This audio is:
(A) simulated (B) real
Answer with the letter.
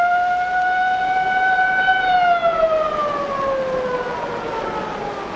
B